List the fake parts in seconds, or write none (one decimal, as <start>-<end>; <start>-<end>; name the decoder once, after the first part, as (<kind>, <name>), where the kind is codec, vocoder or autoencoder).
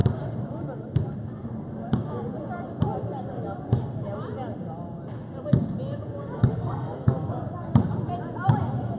6.5-7.3 (codec, SNAC)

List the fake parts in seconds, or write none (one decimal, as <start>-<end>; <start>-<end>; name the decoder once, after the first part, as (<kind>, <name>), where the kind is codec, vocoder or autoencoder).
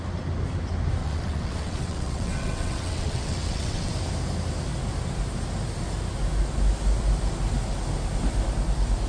1.0-3.9 (vocoder, WaveNeXt)